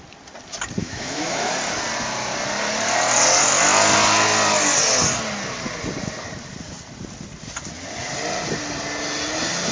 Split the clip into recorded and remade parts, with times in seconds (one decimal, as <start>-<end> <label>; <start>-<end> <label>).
0.0-0.8 recorded; 0.8-1.5 remade; 1.5-9.7 recorded